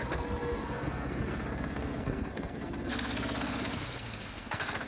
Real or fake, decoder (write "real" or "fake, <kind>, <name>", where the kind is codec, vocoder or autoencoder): fake, codec, SNAC